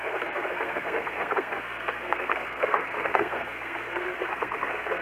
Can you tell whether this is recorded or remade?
remade